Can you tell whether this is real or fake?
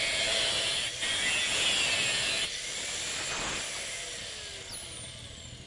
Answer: real